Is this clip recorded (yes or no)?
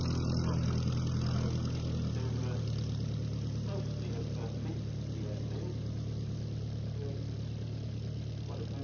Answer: yes